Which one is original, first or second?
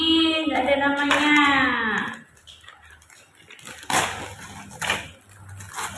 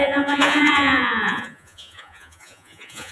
first